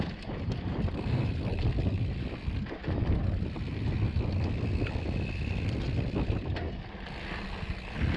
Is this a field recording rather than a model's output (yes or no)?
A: yes